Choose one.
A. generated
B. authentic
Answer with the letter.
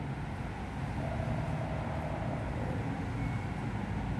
B